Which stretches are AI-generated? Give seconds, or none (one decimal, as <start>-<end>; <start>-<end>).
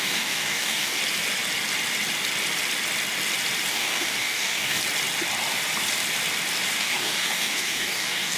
0.0-1.0; 3.7-4.8; 6.8-8.4